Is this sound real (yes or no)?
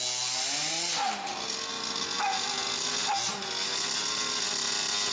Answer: yes